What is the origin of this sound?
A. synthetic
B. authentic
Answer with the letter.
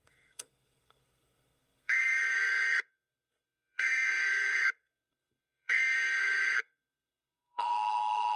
A